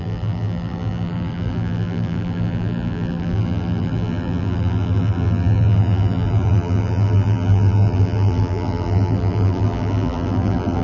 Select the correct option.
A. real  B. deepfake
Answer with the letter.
B